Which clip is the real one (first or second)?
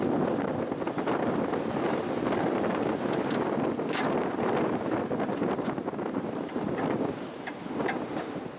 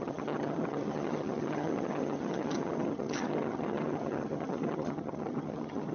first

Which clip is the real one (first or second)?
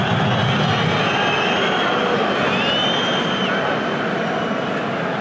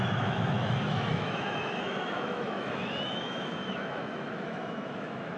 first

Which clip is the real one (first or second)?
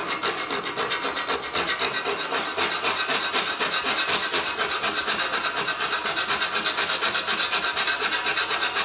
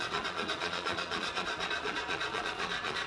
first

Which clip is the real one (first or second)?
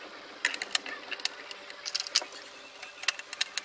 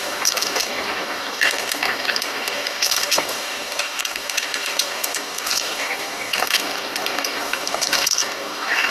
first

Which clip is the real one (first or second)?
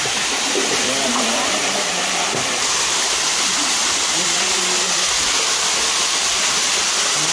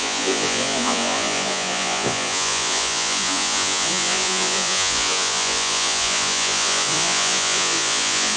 first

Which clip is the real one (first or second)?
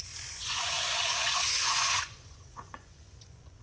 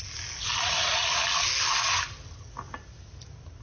second